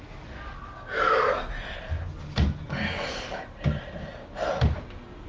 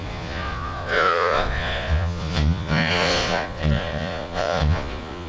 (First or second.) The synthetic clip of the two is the second